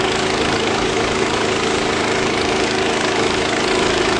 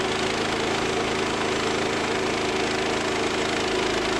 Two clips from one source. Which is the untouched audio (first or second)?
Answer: second